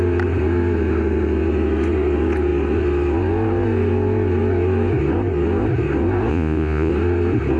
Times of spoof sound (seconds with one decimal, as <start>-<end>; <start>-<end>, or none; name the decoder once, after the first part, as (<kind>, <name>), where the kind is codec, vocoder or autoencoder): 6.3-6.9 (vocoder, Vocos)